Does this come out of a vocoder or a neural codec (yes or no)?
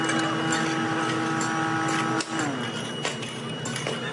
no